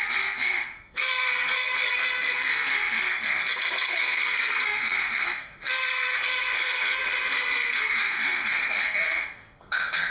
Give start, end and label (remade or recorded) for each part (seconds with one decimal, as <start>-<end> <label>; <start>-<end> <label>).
0.0-10.1 remade